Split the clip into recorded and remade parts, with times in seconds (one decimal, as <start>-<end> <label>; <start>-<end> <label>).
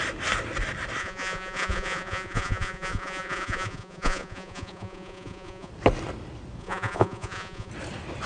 0.0-1.0 recorded; 1.0-5.7 remade; 5.7-6.6 recorded; 6.6-7.7 remade; 7.7-8.3 recorded